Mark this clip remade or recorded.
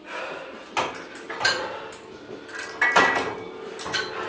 recorded